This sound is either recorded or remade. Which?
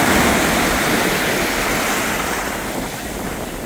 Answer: recorded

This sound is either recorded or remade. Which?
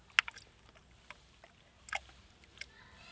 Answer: recorded